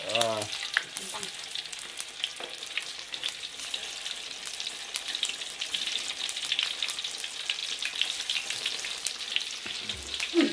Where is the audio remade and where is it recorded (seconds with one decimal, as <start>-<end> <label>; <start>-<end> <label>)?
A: 0.0-2.3 recorded; 2.3-6.8 remade; 6.8-7.6 recorded; 7.6-9.4 remade; 9.4-10.5 recorded